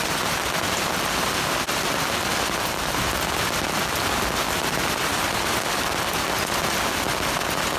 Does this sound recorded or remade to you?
recorded